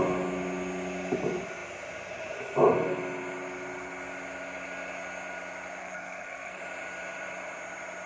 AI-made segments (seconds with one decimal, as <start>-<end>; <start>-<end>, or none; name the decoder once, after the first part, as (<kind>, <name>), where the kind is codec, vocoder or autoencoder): 5.8-6.6 (codec, SNAC)